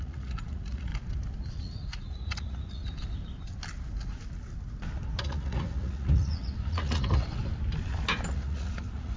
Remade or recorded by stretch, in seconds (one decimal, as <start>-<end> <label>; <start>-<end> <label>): 0.0-0.9 remade; 0.9-1.5 recorded; 1.5-2.8 remade; 2.8-5.2 recorded; 5.2-7.4 remade; 7.4-8.3 recorded; 8.3-9.2 remade